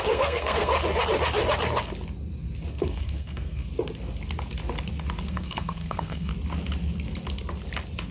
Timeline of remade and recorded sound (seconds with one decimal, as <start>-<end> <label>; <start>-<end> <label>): 0.0-0.7 remade; 0.7-2.7 recorded; 2.7-3.6 remade; 3.6-5.2 recorded; 5.2-6.3 remade; 6.3-8.1 recorded